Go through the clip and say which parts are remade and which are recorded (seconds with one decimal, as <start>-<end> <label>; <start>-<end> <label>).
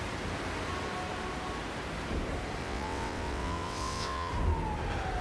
0.0-2.6 recorded; 2.6-4.3 remade; 4.3-5.2 recorded